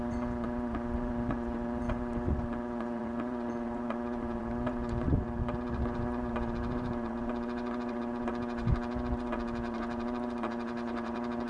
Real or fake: fake